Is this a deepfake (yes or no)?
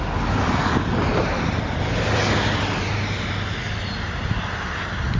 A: no